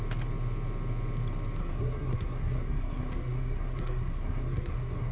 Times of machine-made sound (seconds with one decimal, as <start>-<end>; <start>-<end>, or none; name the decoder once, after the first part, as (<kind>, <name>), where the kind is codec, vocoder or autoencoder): 1.6-5.1 (codec, SNAC)